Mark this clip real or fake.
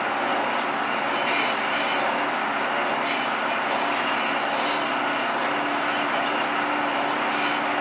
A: real